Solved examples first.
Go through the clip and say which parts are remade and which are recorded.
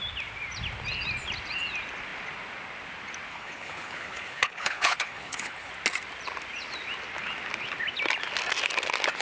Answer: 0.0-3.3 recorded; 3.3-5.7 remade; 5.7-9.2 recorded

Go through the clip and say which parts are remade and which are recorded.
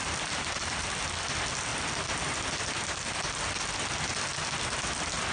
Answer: 0.0-5.3 recorded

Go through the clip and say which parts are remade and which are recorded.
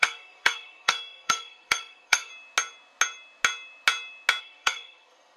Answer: 0.0-2.3 remade; 2.3-4.4 recorded; 4.4-5.4 remade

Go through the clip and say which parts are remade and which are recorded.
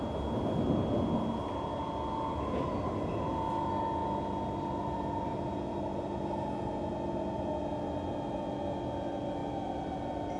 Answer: 0.0-10.4 recorded